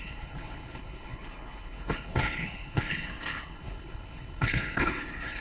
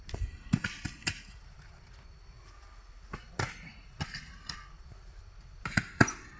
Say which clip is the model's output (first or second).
first